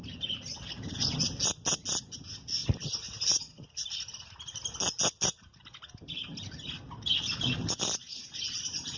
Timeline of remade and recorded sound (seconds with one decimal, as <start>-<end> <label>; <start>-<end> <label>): 0.0-9.0 recorded